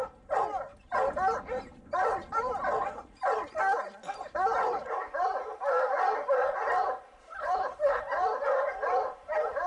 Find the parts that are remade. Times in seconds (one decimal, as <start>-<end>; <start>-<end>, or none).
7.2-8.0